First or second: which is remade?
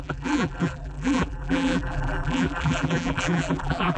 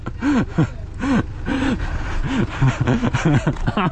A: first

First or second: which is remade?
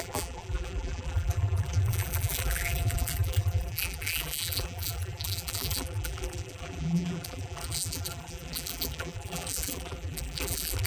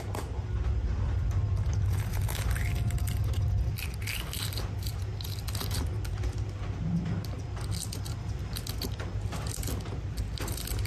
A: first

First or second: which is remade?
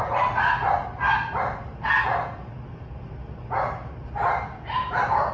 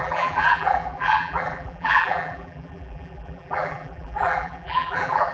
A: second